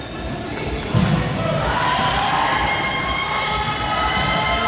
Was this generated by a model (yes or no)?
no